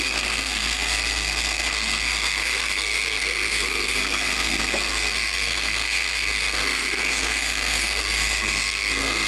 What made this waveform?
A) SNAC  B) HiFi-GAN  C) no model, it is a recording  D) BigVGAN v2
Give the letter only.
A